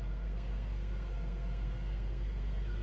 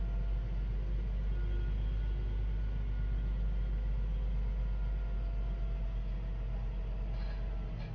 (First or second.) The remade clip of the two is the first